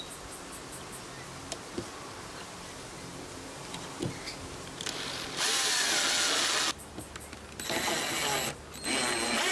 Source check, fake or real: real